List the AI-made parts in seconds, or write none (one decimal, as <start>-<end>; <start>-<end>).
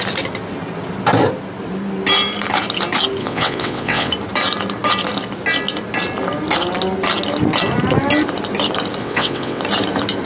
3.2-4.1; 9.0-9.6